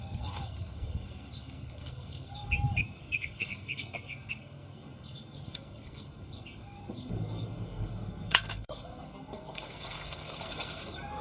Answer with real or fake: fake